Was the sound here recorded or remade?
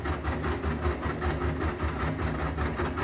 recorded